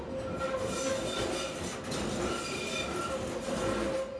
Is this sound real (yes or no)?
yes